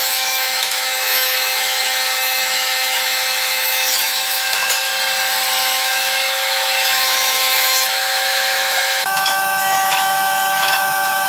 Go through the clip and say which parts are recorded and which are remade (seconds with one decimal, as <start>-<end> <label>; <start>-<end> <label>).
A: 0.0-4.9 remade; 4.9-5.6 recorded; 5.6-11.3 remade